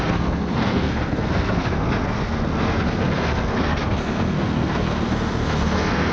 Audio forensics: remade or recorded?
remade